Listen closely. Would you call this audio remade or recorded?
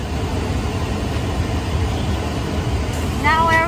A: recorded